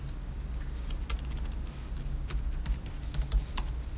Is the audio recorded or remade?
recorded